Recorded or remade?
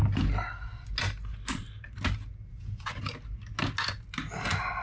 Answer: recorded